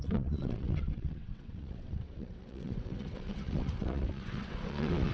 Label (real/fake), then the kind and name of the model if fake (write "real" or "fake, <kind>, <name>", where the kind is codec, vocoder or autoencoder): fake, vocoder, WaveNeXt